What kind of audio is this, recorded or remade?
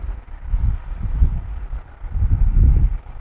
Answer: recorded